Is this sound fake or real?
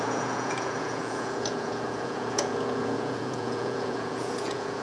fake